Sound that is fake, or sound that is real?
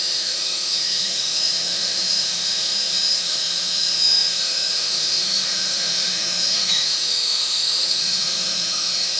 fake